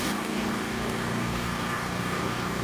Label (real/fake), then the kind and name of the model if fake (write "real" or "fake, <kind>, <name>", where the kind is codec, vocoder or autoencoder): fake, codec, DAC